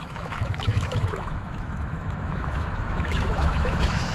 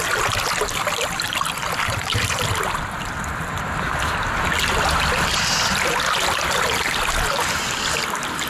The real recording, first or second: second